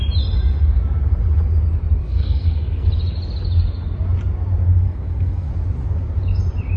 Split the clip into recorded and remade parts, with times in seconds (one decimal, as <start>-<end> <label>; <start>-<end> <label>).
0.0-2.0 recorded; 2.0-2.9 remade; 2.9-4.8 recorded; 4.8-5.5 remade; 5.5-6.8 recorded